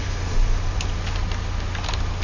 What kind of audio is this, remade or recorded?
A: recorded